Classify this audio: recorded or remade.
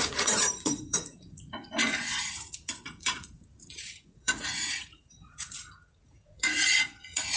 remade